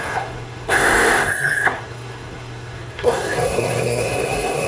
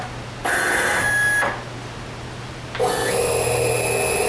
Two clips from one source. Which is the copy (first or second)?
first